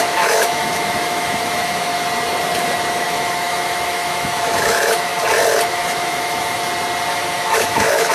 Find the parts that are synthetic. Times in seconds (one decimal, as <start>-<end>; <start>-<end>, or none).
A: 0.0-1.9; 2.9-5.1; 5.7-6.6; 7.1-8.1